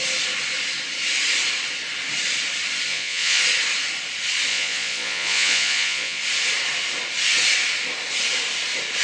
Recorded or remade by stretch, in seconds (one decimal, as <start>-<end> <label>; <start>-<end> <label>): 0.0-2.9 recorded; 2.9-3.4 remade; 3.4-4.5 recorded; 4.5-6.2 remade; 6.2-9.0 recorded